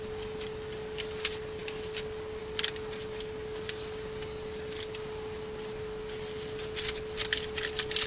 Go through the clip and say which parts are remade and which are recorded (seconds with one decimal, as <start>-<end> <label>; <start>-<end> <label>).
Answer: 0.0-8.1 recorded